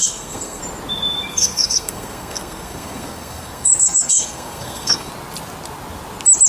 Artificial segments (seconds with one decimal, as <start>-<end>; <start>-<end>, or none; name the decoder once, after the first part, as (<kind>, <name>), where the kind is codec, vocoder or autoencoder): 0.0-0.6 (codec, SNAC); 1.3-5.1